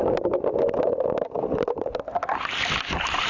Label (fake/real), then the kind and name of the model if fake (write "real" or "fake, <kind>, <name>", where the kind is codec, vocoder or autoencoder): real